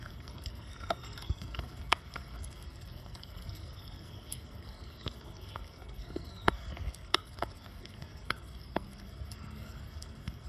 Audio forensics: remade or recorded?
remade